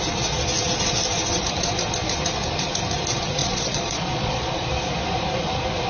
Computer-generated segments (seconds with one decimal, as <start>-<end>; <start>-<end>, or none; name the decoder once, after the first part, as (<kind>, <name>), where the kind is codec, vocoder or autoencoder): 3.4-4.7 (vocoder, Vocos)